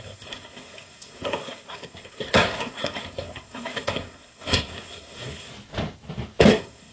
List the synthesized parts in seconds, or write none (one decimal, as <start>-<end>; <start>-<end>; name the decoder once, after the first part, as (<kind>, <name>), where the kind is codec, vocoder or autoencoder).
0.0-5.5 (codec, SNAC); 6.5-6.9